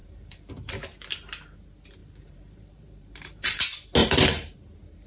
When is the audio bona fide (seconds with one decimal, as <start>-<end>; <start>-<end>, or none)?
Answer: 0.7-2.0; 3.6-4.0; 4.6-5.1